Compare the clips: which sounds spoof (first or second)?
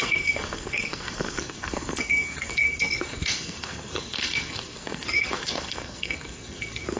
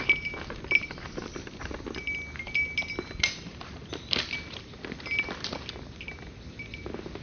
first